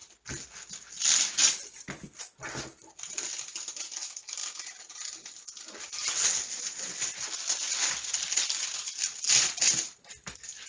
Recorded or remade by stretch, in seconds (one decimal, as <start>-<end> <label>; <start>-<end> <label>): 0.0-10.7 recorded